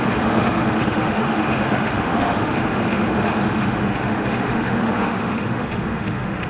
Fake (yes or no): yes